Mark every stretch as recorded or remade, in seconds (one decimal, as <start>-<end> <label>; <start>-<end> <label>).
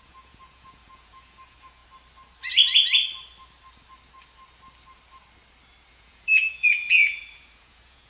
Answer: 0.0-1.8 remade; 1.8-5.9 recorded; 5.9-8.1 remade